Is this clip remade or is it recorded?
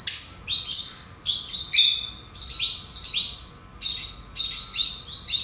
recorded